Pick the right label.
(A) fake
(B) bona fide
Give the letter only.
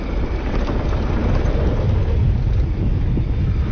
B